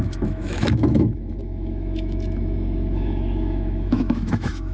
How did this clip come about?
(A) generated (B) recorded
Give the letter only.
A